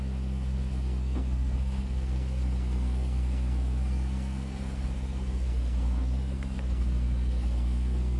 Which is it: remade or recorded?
remade